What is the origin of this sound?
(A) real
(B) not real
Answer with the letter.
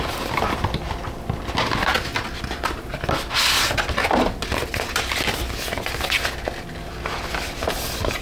A